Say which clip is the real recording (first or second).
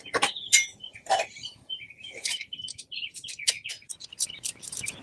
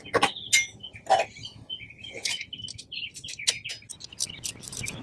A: second